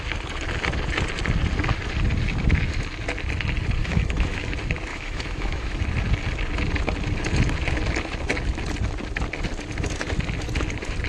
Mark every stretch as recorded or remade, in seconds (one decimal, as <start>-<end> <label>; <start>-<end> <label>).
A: 0.0-3.8 recorded; 3.8-4.5 remade; 4.5-4.9 recorded; 4.9-5.8 remade; 5.8-11.1 recorded